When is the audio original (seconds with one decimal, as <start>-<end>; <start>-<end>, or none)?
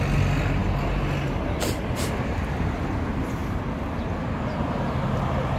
0.0-5.6